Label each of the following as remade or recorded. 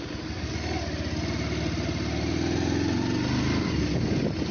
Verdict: recorded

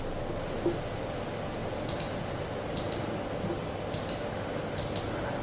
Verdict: recorded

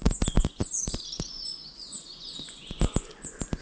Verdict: remade